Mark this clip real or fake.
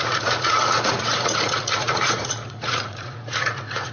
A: fake